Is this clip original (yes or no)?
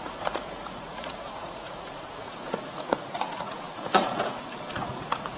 no